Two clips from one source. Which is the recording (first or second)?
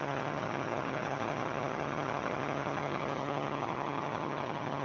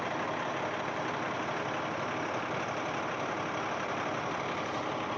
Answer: second